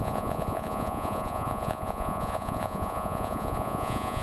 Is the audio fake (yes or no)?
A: yes